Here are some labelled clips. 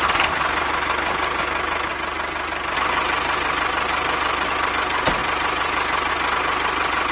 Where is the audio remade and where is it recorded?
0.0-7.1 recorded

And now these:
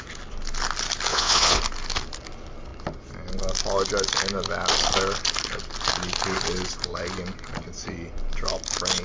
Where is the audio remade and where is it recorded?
0.0-1.1 recorded; 1.1-1.6 remade; 1.6-9.0 recorded

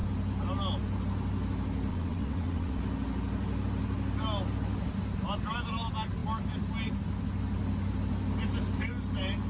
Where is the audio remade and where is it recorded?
0.0-1.9 recorded; 1.9-2.8 remade; 2.8-9.5 recorded